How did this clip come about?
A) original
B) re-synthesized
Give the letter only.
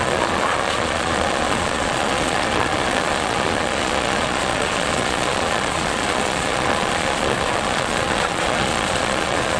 B